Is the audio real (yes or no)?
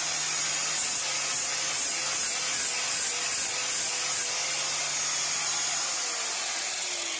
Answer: yes